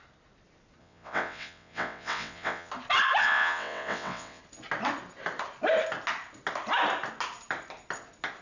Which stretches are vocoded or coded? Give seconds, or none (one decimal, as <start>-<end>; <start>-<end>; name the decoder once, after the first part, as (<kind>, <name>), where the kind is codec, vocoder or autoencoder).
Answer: 0.8-2.7 (vocoder, WaveNeXt); 3.2-4.4